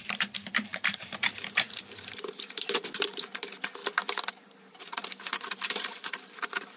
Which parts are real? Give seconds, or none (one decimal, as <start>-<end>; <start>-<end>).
3.8-4.3